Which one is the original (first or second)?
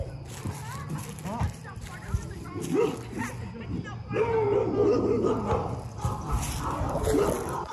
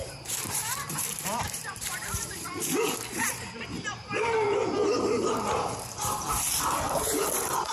first